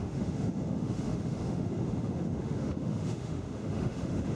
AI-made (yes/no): yes